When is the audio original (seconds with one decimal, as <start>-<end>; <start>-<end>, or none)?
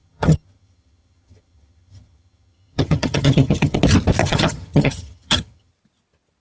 3.8-4.2; 5.7-6.4